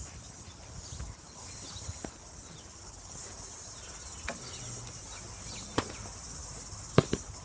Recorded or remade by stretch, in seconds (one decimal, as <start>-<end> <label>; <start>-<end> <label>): 0.0-7.4 recorded